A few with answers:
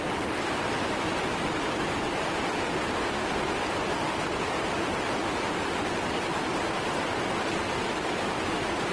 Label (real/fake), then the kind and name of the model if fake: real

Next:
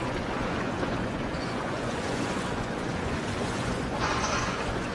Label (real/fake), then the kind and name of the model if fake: fake, vocoder, Vocos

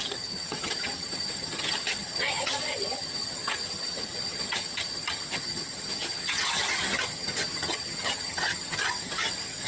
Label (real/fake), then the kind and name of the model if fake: fake, vocoder, HiFi-GAN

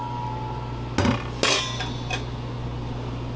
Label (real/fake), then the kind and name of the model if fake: real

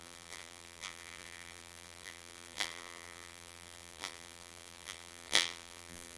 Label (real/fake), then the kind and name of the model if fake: fake, vocoder, BigVGAN v2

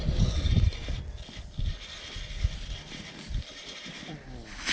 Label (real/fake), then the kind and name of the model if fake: real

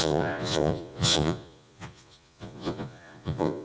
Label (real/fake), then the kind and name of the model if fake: fake, vocoder, Vocos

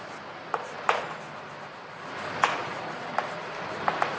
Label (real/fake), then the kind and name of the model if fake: real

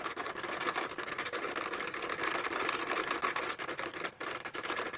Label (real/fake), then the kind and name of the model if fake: real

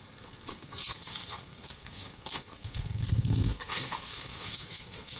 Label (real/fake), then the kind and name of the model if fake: fake, codec, SNAC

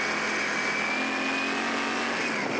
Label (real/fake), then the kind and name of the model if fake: real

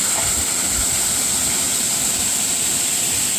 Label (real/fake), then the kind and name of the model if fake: fake, vocoder, BigVGAN v2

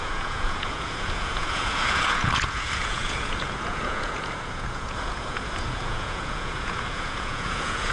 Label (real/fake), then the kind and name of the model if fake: fake, vocoder, Vocos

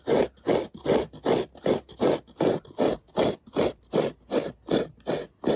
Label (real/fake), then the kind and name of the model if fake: real